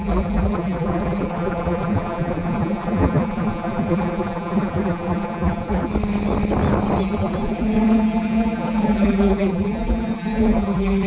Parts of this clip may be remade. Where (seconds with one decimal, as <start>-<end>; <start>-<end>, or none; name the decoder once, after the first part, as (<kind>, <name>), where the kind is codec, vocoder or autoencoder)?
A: 0.0-5.9 (vocoder, BigVGAN v2); 7.0-11.1